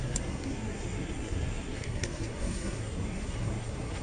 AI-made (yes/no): yes